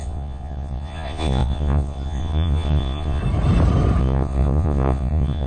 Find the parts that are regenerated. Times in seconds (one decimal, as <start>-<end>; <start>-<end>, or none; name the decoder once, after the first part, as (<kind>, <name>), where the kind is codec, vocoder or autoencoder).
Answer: 0.0-3.2 (vocoder, Vocos); 4.0-5.5